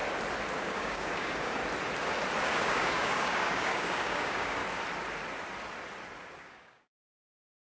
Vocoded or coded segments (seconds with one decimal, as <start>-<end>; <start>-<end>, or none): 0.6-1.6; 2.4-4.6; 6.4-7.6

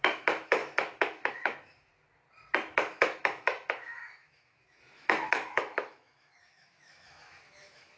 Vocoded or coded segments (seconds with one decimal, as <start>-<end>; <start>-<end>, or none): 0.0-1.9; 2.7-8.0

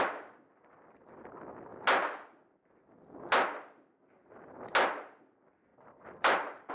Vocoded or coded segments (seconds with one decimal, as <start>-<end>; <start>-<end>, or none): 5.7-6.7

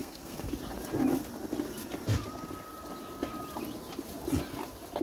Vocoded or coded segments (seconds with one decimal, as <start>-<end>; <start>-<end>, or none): 0.0-0.5